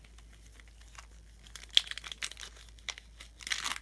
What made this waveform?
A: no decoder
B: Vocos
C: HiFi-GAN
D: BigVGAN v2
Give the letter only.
A